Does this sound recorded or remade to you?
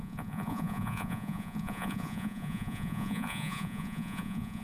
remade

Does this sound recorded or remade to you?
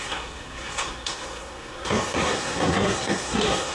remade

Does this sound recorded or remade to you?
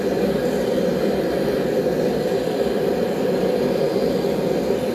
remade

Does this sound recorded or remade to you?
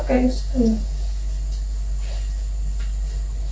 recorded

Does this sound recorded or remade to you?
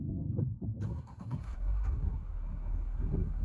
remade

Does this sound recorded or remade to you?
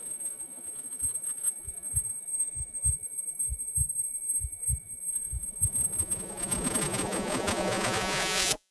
remade